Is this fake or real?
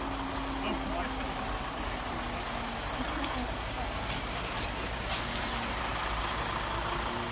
real